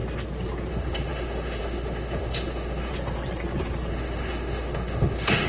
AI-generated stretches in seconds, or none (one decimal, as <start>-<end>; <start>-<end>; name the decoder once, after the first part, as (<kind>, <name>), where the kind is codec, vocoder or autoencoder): 0.7-2.9 (autoencoder, DAC-VAE); 3.9-5.5